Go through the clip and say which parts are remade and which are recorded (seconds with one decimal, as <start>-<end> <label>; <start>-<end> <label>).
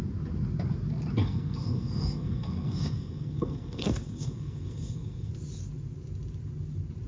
0.0-1.2 recorded; 1.2-5.3 remade; 5.3-7.1 recorded